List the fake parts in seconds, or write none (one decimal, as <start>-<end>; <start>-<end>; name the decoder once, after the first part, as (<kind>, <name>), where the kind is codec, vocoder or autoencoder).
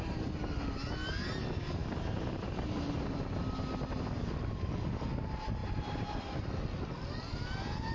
1.8-2.9 (vocoder, BigVGAN v2); 5.6-6.4